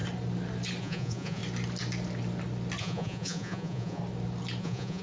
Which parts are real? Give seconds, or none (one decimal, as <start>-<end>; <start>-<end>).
0.0-0.8; 1.4-2.8; 4.0-4.6